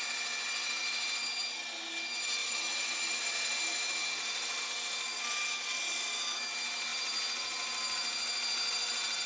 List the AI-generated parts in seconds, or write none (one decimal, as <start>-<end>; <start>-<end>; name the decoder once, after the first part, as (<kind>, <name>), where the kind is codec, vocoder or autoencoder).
2.4-4.6 (vocoder, BigVGAN v2)